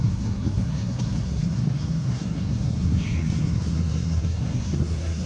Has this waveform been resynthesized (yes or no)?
yes